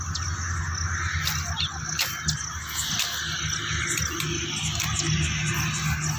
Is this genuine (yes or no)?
yes